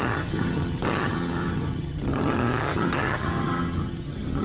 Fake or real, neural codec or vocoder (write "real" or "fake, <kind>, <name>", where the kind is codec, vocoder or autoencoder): fake, vocoder, HiFi-GAN